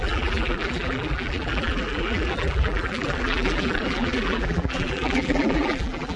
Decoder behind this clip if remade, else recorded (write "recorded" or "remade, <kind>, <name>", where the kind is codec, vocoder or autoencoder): remade, vocoder, BigVGAN v2